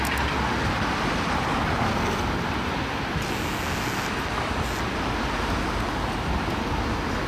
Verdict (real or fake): real